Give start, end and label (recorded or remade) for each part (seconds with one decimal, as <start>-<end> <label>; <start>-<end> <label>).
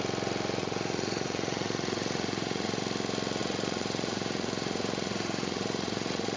0.0-0.6 recorded; 0.6-2.8 remade; 2.8-3.4 recorded; 3.4-6.4 remade